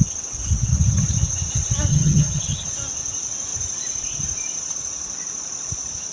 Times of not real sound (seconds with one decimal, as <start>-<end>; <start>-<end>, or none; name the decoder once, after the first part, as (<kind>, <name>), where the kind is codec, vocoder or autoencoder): 1.9-2.7 (vocoder, HiFi-GAN)